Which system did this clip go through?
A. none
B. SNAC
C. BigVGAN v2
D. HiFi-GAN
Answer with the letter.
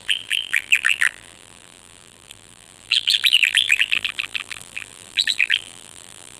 C